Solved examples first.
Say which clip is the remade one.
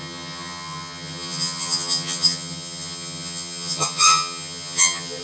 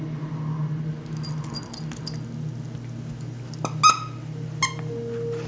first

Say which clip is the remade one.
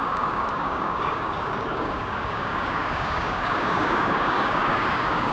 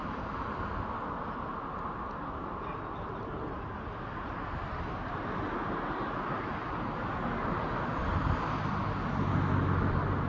first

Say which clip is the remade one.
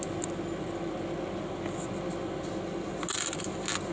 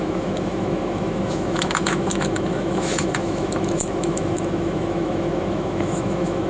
second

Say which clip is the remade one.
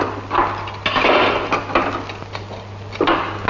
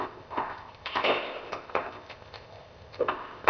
second